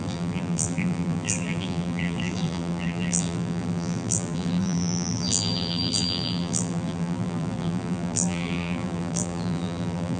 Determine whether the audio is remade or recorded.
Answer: remade